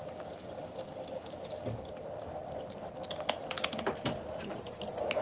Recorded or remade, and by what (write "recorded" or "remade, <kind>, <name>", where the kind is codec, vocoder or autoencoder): recorded